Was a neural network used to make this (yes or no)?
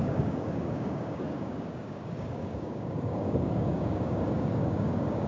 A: yes